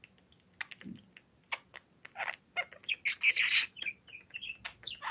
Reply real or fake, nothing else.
real